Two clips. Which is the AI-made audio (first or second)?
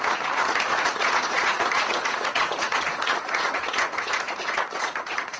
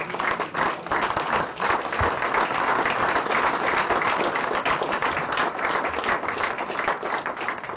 first